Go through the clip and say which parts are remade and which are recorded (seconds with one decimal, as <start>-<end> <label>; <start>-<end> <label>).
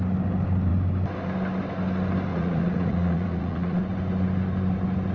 0.0-2.3 recorded; 2.3-3.8 remade; 3.8-5.1 recorded